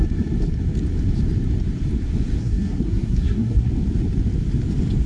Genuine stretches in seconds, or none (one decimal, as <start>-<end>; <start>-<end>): 0.0-2.4; 3.7-5.1